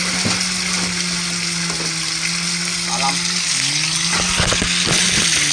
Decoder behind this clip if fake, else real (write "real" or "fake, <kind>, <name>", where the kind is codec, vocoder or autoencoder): real